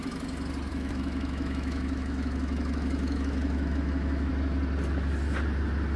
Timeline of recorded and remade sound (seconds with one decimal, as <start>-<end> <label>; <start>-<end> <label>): 0.0-0.7 recorded; 0.7-4.3 remade; 4.3-6.0 recorded